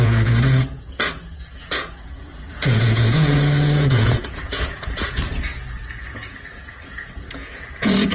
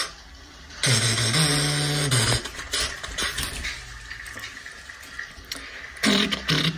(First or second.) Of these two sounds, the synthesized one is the first